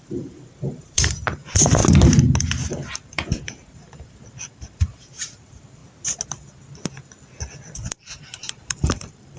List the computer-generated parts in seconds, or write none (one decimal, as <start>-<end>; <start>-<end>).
0.0-1.8; 2.4-5.8; 7.9-9.4